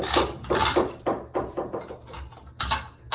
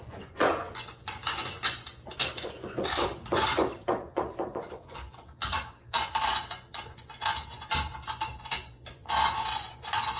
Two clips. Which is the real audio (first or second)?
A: first